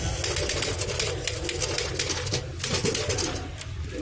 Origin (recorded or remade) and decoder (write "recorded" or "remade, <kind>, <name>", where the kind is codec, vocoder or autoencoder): recorded